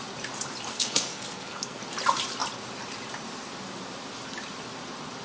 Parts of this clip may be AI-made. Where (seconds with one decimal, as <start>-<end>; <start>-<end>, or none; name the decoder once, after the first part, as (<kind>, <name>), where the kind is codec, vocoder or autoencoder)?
0.7-1.8 (codec, SNAC)